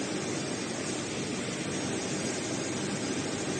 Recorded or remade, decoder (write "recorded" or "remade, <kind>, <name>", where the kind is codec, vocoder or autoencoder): recorded